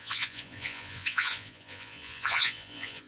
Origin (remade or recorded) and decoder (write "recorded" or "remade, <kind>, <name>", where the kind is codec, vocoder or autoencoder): remade, vocoder, Vocos